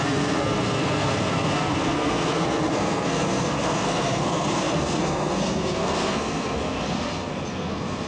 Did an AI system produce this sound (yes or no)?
yes